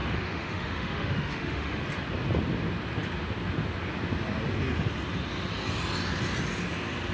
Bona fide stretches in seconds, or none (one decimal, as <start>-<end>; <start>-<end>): 1.8-7.1